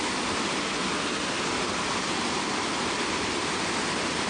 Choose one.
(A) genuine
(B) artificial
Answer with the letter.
A